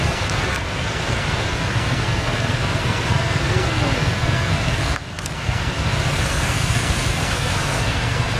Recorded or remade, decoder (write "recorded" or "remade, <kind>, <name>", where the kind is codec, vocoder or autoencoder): remade, codec, SNAC